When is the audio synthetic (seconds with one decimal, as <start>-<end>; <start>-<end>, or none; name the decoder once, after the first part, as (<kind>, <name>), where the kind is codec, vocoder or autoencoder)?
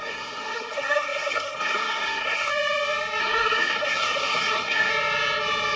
0.0-2.5 (codec, SNAC); 3.2-4.9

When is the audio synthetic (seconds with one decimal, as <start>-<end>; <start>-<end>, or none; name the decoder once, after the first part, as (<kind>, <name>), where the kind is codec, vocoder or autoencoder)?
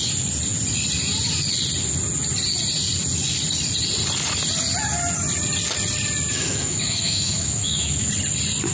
6.3-8.1 (autoencoder, DAC-VAE)